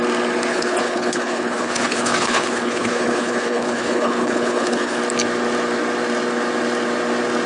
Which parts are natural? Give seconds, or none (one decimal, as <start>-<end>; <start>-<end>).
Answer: 0.0-0.5; 5.0-7.5

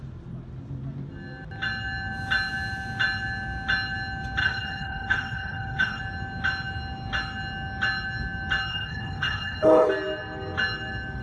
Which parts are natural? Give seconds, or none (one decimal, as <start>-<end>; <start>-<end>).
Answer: 0.0-4.4; 6.0-8.7; 9.9-11.2